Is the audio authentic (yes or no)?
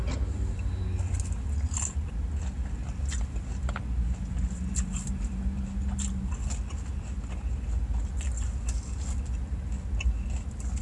yes